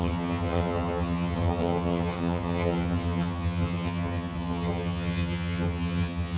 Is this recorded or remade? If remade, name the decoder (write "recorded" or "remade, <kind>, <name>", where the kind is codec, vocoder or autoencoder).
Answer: remade, vocoder, HiFi-GAN